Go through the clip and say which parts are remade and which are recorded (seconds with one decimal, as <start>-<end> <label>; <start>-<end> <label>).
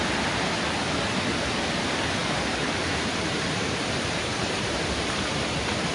0.0-2.2 recorded; 2.2-5.9 remade